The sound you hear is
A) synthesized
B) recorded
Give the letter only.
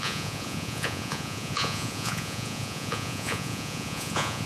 A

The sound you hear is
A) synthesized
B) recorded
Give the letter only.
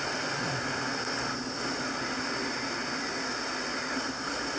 B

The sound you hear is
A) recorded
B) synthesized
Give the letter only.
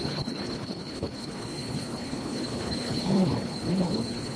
B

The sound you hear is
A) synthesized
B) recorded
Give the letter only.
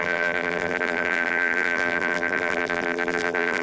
A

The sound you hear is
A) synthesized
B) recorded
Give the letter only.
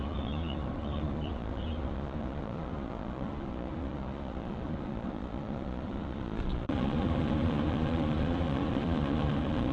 A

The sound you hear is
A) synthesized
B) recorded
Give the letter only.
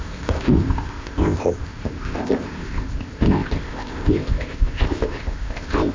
A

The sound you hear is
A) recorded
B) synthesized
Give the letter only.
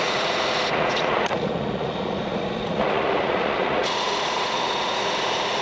B